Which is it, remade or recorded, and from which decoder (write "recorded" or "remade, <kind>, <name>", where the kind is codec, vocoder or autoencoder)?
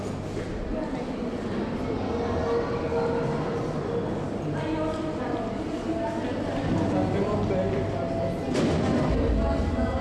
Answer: recorded